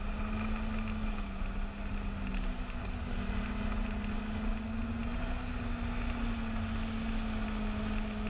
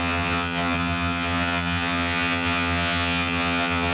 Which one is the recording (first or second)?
first